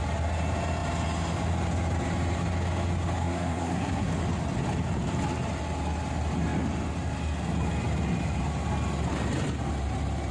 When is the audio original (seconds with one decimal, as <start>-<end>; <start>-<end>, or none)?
0.0-3.2; 4.1-10.3